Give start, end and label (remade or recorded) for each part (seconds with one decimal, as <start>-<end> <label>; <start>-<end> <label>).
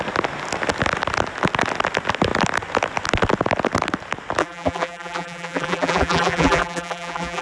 0.0-4.4 recorded; 4.4-7.4 remade